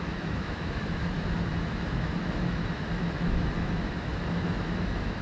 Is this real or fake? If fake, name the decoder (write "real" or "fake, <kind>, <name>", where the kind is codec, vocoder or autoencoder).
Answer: fake, autoencoder, DAC-VAE